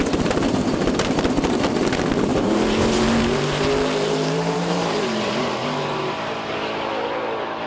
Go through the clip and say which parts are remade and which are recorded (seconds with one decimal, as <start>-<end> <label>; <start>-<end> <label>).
0.0-2.3 recorded; 2.3-6.9 remade; 6.9-7.7 recorded